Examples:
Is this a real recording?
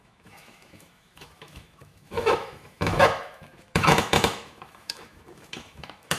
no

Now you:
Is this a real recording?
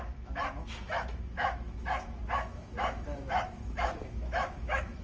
no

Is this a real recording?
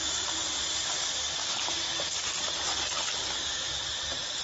yes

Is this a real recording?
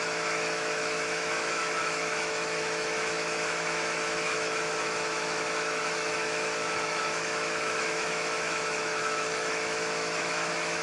no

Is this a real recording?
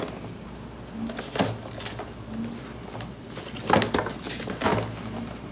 yes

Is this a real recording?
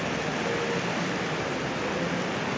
yes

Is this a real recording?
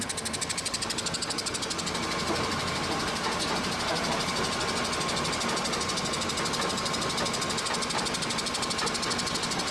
yes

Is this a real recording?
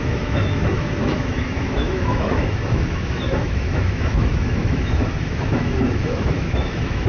no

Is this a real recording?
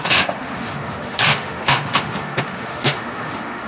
no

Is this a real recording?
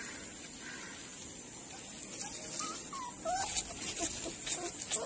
yes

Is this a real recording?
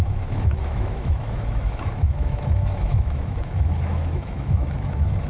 no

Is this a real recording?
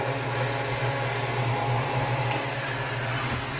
yes